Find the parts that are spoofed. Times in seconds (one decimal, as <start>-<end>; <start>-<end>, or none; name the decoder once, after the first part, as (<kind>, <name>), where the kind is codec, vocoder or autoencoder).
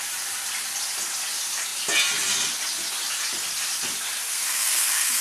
4.3-5.2 (codec, SNAC)